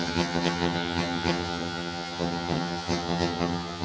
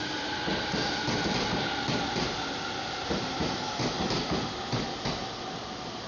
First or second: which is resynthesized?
first